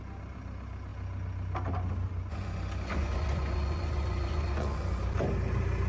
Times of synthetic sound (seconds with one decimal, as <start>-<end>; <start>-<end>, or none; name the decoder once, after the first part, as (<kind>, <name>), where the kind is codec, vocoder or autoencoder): 2.1-5.0 (vocoder, Vocos)